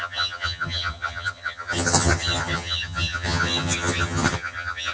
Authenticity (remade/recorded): remade